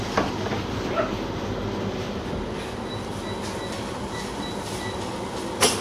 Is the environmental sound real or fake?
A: real